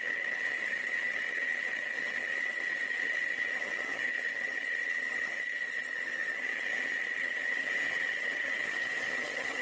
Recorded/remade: remade